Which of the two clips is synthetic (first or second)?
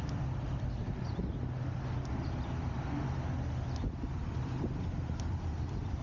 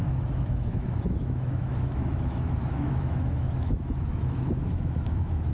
second